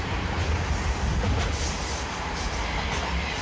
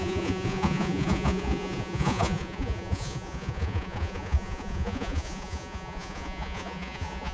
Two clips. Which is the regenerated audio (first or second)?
second